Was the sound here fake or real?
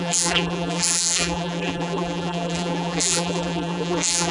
fake